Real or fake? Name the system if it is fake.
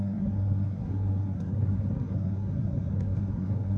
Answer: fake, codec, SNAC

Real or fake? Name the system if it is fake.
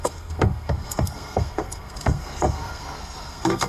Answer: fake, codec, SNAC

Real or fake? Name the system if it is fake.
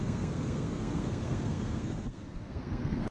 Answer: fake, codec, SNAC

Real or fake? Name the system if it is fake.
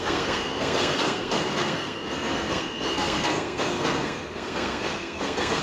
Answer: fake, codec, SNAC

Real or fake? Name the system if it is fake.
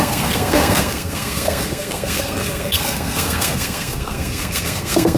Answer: fake, codec, SNAC